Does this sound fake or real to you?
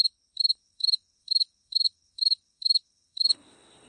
fake